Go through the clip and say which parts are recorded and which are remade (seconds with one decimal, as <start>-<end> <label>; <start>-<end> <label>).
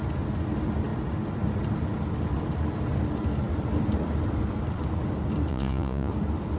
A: 0.0-5.5 recorded; 5.5-6.1 remade; 6.1-6.6 recorded